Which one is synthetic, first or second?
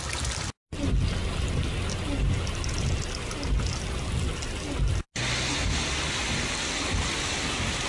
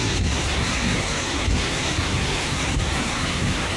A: second